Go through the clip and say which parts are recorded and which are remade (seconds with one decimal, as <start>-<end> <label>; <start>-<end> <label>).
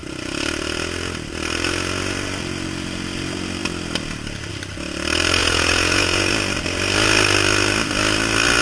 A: 0.0-5.4 recorded; 5.4-6.3 remade; 6.3-8.6 recorded